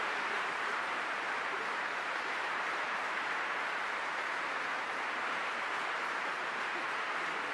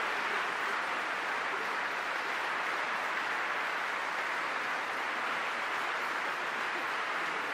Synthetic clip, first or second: first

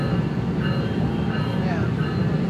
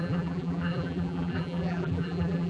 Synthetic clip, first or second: second